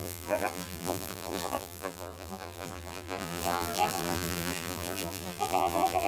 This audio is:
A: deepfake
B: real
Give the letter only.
A